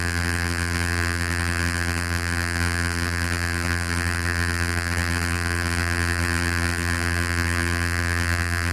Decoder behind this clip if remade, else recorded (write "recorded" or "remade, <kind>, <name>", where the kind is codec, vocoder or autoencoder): remade, vocoder, BigVGAN v2